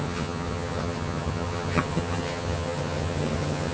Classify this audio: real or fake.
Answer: fake